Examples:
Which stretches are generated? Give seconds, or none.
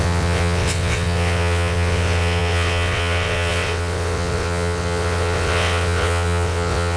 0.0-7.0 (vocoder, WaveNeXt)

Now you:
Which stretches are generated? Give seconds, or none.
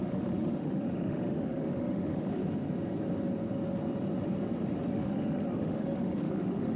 0.0-2.4 (autoencoder, DAC-VAE); 4.9-6.8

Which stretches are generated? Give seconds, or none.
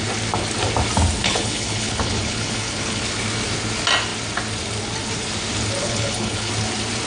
1.2-3.0 (codec, HILCodec); 5.8-6.5